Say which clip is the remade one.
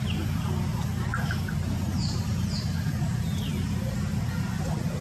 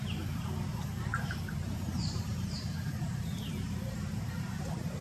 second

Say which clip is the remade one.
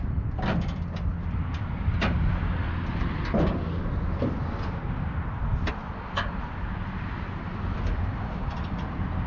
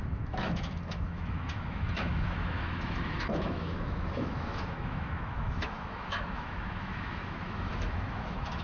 second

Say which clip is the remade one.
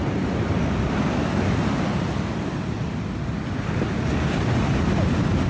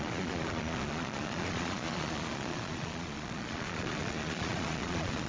second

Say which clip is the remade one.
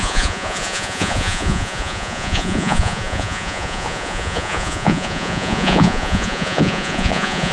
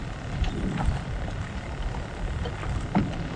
first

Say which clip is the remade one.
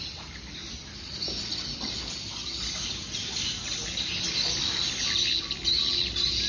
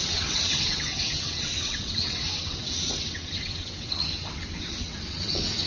second